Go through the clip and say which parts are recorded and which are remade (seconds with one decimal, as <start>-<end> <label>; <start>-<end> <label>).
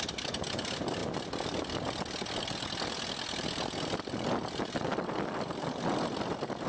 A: 0.0-6.7 recorded